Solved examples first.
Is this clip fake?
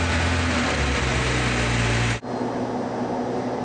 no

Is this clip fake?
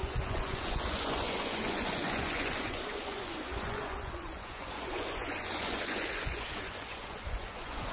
yes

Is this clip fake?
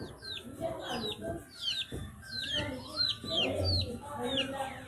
no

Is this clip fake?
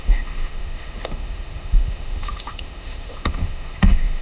yes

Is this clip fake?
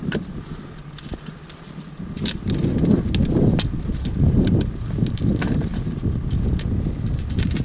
no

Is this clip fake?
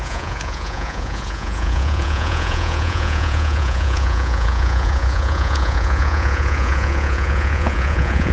yes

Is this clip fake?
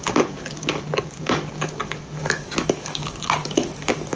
yes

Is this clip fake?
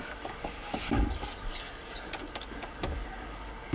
yes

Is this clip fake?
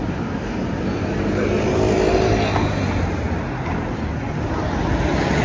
no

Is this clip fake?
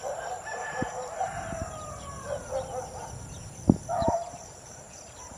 yes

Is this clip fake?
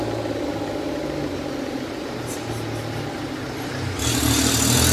no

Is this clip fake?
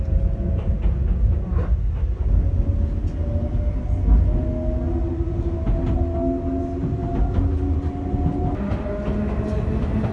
no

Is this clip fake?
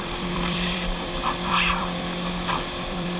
yes